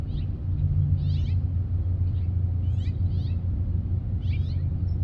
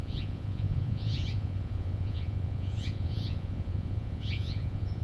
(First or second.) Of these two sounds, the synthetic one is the second